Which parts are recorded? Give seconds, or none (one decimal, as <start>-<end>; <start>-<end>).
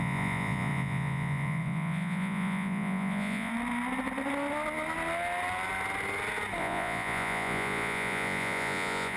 3.5-6.6